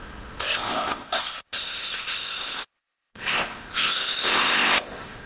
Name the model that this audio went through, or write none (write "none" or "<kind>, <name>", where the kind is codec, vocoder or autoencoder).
codec, ZipCodec